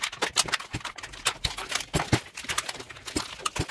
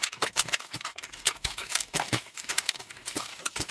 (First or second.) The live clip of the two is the first